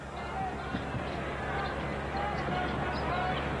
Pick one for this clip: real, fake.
real